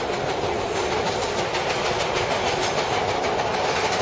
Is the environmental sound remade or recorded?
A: recorded